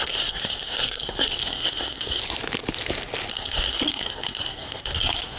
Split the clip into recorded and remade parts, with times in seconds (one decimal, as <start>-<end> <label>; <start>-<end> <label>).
0.0-2.2 remade; 2.2-3.3 recorded; 3.3-5.4 remade

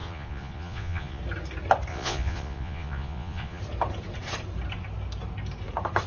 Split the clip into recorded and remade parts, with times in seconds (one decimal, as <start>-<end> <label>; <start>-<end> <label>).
0.0-1.2 remade; 1.2-1.9 recorded; 1.9-3.6 remade; 3.6-6.1 recorded

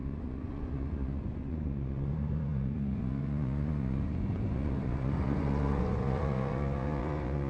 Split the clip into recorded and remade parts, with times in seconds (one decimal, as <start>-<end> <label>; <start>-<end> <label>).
0.0-7.5 remade

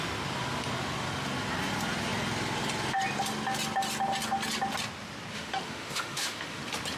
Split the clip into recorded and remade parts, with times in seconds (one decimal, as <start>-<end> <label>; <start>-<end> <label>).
0.0-5.3 recorded; 5.3-6.6 remade; 6.6-7.0 recorded